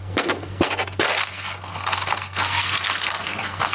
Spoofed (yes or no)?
yes